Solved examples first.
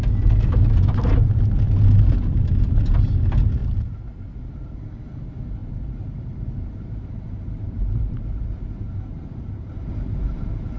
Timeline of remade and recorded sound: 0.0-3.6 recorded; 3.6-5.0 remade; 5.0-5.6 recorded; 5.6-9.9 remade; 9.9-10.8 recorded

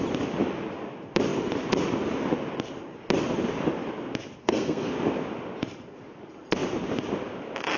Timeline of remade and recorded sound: 0.0-4.4 recorded; 4.4-4.9 remade; 4.9-7.8 recorded

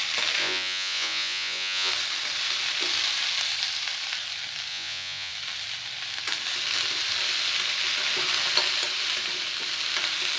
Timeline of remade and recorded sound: 0.0-0.4 recorded; 0.4-1.9 remade; 1.9-4.7 recorded; 4.7-5.3 remade; 5.3-10.4 recorded

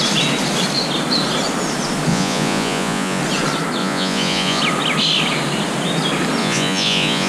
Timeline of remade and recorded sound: 0.0-2.1 recorded; 2.1-3.2 remade; 3.2-3.8 recorded; 3.8-4.6 remade; 4.6-6.4 recorded; 6.4-7.3 remade

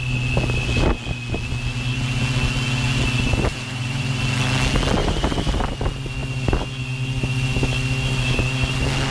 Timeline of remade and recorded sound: 0.0-3.5 recorded; 3.5-4.2 remade; 4.2-5.0 recorded; 5.0-5.6 remade; 5.6-9.1 recorded

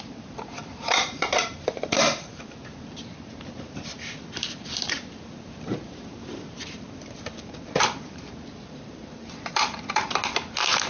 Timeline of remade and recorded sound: 0.0-10.2 remade; 10.2-10.9 recorded